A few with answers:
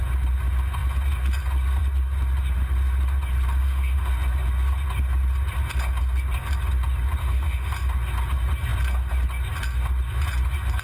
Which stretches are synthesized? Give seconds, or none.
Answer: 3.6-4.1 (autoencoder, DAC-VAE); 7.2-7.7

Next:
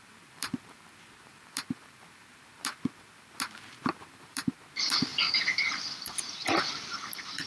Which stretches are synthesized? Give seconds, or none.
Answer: 0.0-7.5 (vocoder, BigVGAN v2)

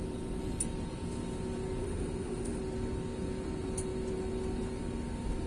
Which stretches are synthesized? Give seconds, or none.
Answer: 1.8-2.6 (autoencoder, DAC-VAE)

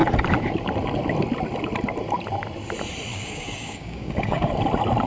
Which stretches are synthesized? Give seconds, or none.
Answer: 3.1-4.5 (codec, DAC)